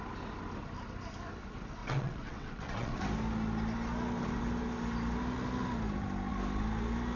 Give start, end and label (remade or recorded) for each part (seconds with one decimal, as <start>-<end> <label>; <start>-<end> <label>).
0.0-1.8 recorded; 1.8-3.0 remade; 3.0-7.2 recorded